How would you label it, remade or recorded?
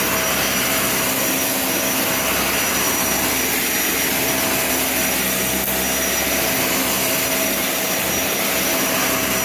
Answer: recorded